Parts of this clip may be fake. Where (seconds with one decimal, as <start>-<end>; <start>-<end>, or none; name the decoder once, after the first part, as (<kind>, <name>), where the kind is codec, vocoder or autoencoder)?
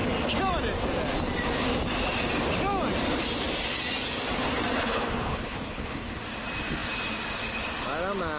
4.8-6.2 (codec, HILCodec)